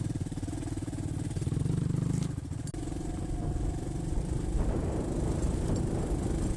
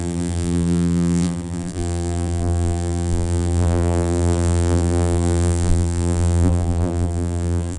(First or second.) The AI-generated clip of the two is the second